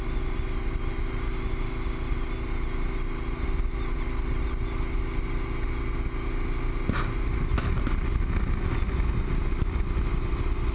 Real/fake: real